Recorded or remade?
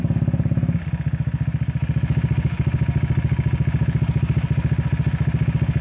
recorded